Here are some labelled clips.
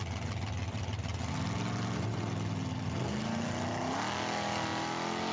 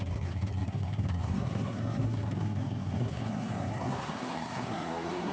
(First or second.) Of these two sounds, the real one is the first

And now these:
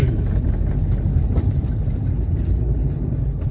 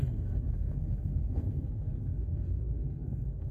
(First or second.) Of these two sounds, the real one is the first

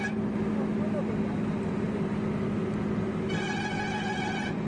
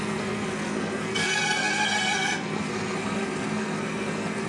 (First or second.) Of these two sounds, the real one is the first